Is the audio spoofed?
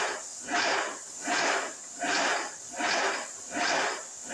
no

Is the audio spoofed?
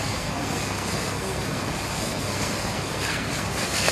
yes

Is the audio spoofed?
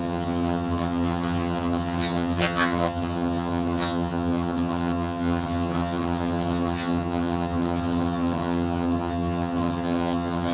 yes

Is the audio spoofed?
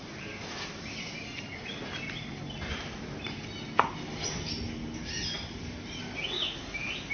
no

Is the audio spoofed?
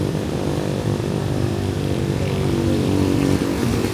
yes